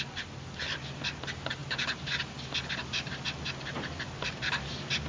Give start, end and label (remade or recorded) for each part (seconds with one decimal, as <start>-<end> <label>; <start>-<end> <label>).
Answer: 0.0-5.1 recorded